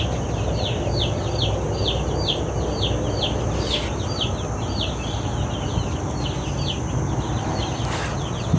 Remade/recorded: recorded